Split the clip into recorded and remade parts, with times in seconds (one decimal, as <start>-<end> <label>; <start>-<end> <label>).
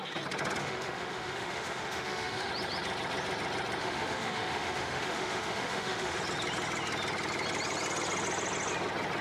0.0-0.6 recorded; 0.6-2.5 remade; 2.5-3.8 recorded; 3.8-6.2 remade; 6.2-9.2 recorded